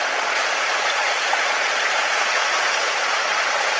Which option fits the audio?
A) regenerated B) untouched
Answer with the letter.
A